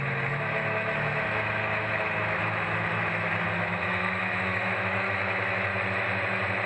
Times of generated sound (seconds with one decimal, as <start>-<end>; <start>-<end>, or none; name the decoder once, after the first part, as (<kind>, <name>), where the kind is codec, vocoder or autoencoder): 0.0-5.7 (autoencoder, DAC-VAE)